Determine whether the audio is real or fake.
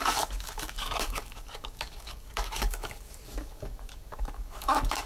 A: fake